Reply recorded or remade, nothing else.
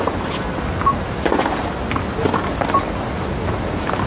recorded